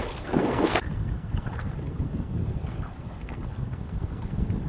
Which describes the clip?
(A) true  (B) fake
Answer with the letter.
B